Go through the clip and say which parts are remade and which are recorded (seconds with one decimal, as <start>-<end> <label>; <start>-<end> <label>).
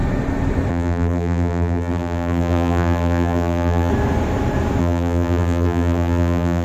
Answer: 0.0-0.7 recorded; 0.7-3.9 remade; 3.9-4.8 recorded; 4.8-6.6 remade